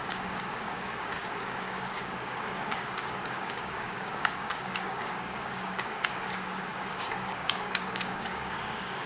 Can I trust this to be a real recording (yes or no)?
no